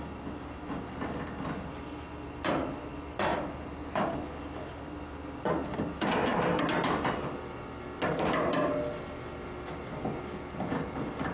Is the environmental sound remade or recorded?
recorded